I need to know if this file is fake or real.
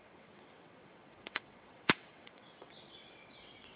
fake